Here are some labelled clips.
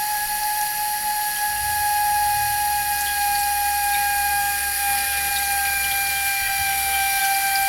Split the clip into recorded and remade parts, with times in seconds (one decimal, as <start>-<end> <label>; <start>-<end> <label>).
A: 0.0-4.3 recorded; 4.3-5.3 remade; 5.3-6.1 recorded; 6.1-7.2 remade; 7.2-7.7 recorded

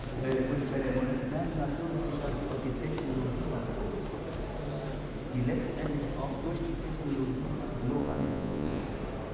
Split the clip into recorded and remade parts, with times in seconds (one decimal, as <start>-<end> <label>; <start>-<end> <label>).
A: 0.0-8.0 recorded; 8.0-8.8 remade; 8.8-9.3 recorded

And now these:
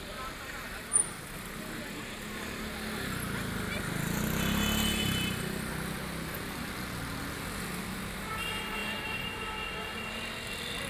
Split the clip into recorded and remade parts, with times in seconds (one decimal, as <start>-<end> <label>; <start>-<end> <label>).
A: 0.0-10.9 recorded

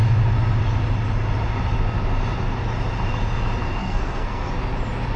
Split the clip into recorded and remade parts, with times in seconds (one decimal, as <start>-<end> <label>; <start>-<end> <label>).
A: 0.0-3.8 recorded; 3.8-4.5 remade; 4.5-5.2 recorded

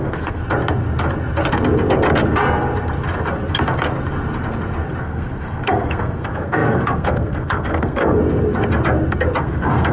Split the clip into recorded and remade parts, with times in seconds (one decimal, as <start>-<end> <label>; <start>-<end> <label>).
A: 0.0-0.4 remade; 0.4-5.0 recorded; 5.0-8.2 remade; 8.2-9.4 recorded; 9.4-9.9 remade

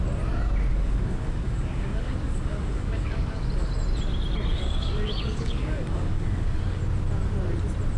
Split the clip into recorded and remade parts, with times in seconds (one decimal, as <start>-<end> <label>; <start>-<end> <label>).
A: 0.0-0.7 recorded; 0.7-3.7 remade; 3.7-4.5 recorded; 4.5-6.8 remade; 6.8-8.0 recorded

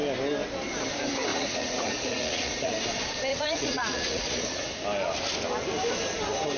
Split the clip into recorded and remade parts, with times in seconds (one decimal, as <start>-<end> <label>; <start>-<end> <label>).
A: 0.0-1.3 recorded; 1.3-2.7 remade; 2.7-3.3 recorded; 3.3-4.7 remade; 4.7-6.6 recorded

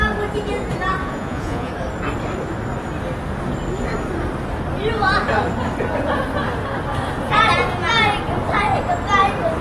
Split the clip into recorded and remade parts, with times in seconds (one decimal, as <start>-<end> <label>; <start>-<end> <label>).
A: 0.0-1.0 recorded; 1.0-1.7 remade; 1.7-9.6 recorded